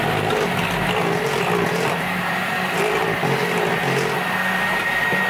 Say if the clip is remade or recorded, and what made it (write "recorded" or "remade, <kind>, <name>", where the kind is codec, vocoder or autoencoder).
recorded